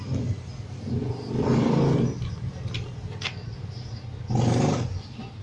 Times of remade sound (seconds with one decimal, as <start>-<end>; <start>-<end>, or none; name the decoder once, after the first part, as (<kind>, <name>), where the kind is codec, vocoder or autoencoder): none